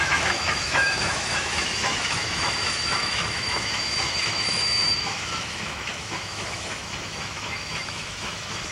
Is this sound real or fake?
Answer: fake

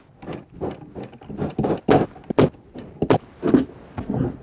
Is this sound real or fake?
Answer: real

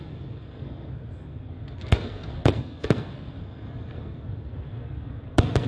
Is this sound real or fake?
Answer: fake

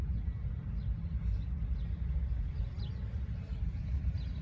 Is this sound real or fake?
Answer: real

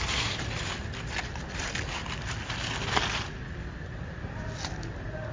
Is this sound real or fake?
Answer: real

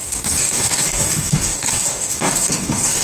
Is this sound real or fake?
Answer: fake